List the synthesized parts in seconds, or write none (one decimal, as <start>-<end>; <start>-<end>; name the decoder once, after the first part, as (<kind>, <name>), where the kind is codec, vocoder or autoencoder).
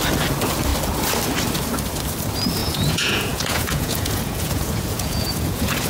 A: 2.6-5.9 (vocoder, Vocos)